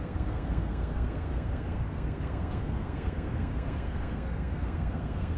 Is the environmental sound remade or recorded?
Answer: remade